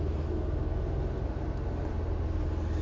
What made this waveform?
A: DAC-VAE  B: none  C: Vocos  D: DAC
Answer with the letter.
B